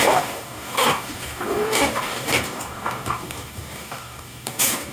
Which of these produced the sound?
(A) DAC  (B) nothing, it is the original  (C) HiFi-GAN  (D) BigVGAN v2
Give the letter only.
A